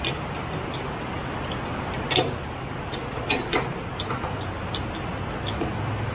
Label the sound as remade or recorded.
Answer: recorded